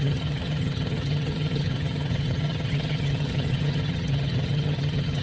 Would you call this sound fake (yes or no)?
yes